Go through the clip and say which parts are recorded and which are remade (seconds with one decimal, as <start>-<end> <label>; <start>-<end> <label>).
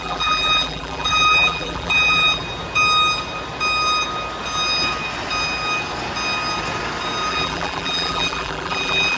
0.0-2.4 remade; 2.4-7.3 recorded; 7.3-9.2 remade